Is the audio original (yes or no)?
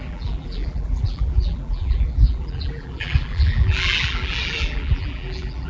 no